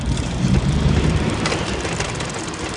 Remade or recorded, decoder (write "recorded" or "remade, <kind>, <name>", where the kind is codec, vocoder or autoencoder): remade, vocoder, BigVGAN v2